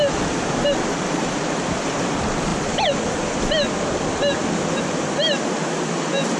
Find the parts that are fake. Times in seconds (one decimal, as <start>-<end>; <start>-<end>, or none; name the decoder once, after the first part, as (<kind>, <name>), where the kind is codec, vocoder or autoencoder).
none